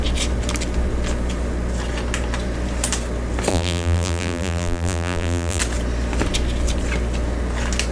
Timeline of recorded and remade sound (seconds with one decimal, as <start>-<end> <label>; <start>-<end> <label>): 0.0-3.5 recorded; 3.5-5.6 remade; 5.6-7.9 recorded